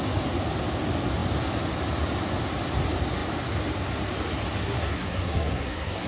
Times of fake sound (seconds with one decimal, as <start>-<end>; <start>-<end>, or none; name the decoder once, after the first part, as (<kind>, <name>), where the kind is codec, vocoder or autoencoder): 4.6-6.1 (codec, SNAC)